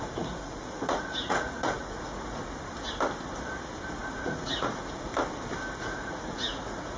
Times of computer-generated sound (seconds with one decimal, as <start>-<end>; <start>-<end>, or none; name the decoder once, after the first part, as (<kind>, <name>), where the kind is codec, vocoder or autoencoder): 0.0-2.4 (vocoder, Vocos); 4.1-5.1; 5.8-7.0